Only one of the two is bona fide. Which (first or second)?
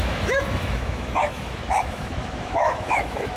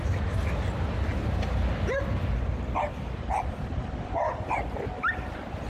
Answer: second